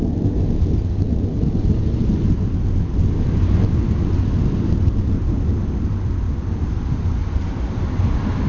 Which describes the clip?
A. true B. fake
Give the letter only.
A